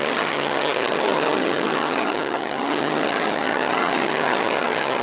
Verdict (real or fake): fake